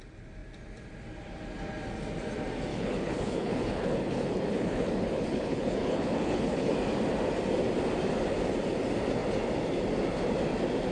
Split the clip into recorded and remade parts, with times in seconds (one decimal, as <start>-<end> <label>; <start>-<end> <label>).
0.0-2.7 recorded; 2.7-6.7 remade; 6.7-10.9 recorded